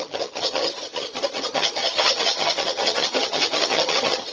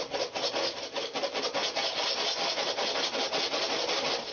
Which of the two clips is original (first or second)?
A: second